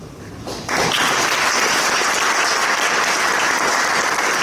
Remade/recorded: recorded